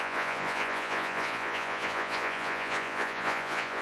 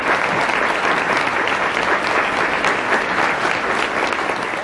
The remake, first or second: first